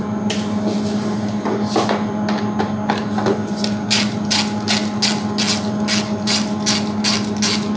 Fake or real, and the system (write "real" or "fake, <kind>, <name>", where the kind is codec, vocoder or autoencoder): real